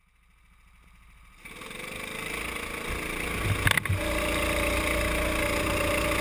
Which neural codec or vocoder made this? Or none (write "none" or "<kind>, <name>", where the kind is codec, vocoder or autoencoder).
none